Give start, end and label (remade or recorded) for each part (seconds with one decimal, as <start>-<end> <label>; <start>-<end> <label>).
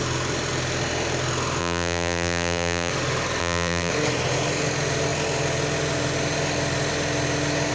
0.0-1.6 recorded; 1.6-2.9 remade; 2.9-3.4 recorded; 3.4-3.9 remade; 3.9-7.7 recorded